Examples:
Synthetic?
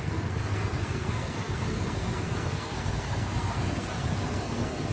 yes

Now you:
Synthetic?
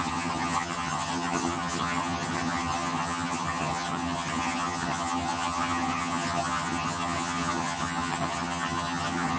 yes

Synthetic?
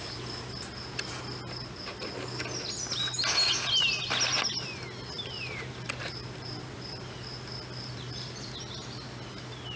no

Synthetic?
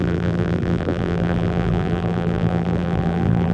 yes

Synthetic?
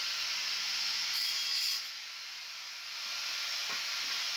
no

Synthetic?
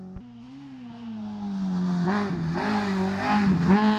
no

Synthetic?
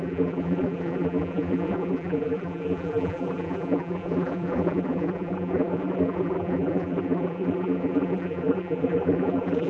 yes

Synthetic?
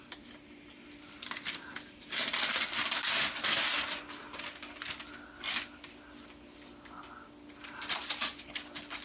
no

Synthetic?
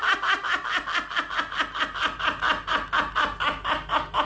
no